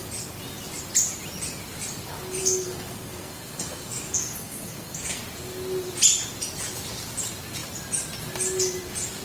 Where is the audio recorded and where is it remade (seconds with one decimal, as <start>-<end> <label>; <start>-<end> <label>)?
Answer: 0.0-2.4 recorded; 2.4-5.2 remade; 5.2-9.2 recorded